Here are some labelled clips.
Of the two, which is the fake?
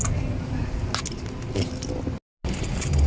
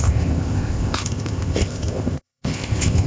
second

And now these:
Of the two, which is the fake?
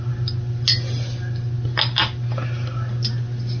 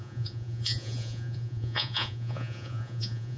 second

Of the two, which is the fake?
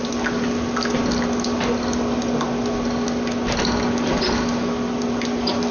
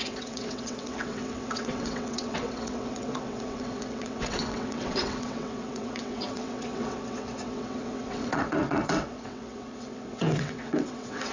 second